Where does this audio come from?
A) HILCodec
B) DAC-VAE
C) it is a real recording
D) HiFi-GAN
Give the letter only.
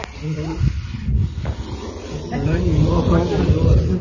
C